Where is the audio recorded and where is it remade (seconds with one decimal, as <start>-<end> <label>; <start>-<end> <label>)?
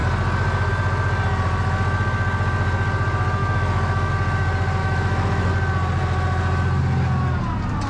0.0-3.4 recorded; 3.4-4.1 remade; 4.1-4.8 recorded; 4.8-5.5 remade; 5.5-7.9 recorded